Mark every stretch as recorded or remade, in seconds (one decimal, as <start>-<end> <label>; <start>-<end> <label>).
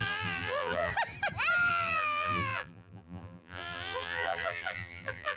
0.0-0.9 remade; 0.9-1.7 recorded; 1.7-5.4 remade